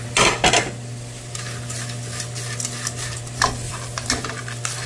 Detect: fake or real real